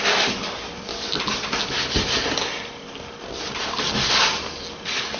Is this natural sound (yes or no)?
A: yes